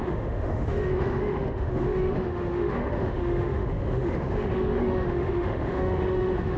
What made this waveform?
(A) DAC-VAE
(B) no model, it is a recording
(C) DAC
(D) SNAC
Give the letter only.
A